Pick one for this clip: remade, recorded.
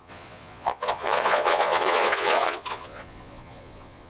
remade